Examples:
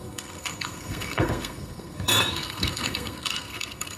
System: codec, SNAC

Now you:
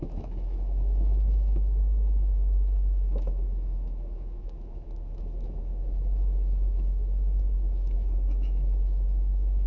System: autoencoder, DAC-VAE